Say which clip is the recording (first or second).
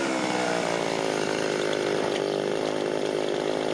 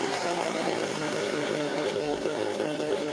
first